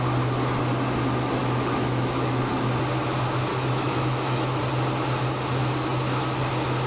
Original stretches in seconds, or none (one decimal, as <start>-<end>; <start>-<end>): 0.0-1.4; 2.5-3.5; 4.6-6.9